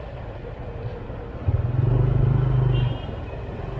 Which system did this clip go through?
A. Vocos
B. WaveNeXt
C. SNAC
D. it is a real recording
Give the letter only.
D